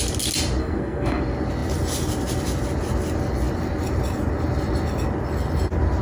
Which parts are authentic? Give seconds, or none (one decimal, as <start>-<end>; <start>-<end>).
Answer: 0.0-0.6; 1.2-6.0